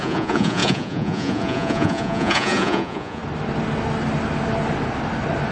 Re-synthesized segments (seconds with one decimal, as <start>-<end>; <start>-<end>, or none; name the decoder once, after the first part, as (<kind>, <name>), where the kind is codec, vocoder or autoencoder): 0.0-3.2 (vocoder, Vocos)